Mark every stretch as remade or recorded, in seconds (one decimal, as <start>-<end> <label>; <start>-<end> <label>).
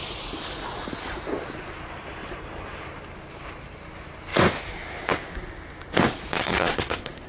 0.0-6.4 recorded; 6.4-7.3 remade